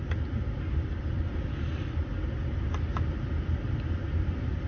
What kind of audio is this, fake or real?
real